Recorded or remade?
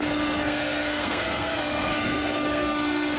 remade